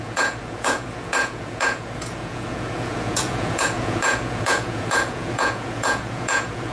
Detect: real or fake fake